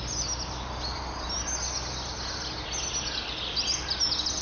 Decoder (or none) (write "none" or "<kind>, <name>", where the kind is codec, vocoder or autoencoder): none